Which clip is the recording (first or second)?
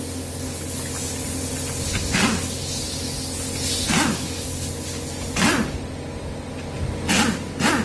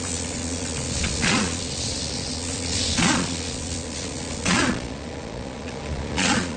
first